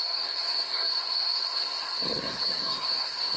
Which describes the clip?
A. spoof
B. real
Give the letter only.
A